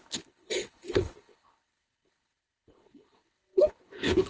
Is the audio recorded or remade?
remade